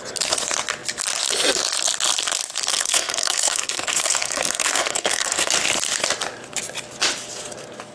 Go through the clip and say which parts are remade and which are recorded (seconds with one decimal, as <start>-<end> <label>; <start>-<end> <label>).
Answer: 0.0-2.7 recorded; 2.7-5.5 remade; 5.5-7.9 recorded